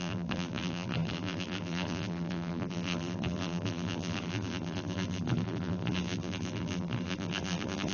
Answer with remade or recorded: remade